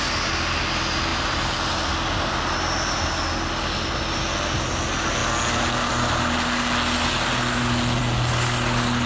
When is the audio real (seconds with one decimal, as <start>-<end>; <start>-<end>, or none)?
0.0-1.1; 1.7-9.1